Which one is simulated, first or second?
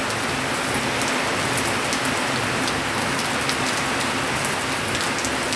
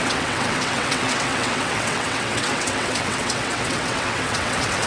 second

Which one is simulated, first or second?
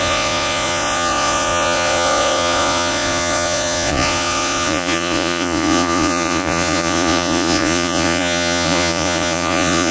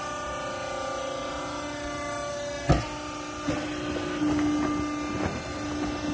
first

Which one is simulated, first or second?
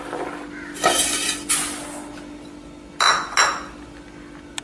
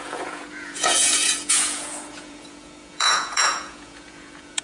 second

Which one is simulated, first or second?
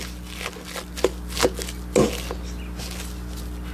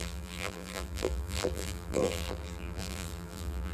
second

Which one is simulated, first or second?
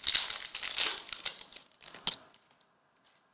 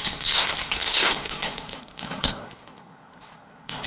second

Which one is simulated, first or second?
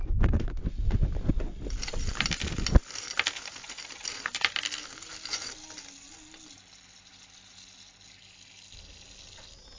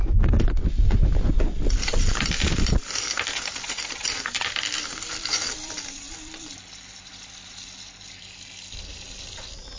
second